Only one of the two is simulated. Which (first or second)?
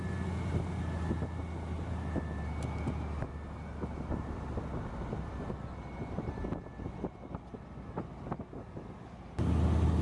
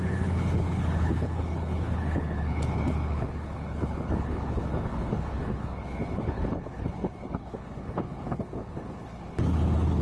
second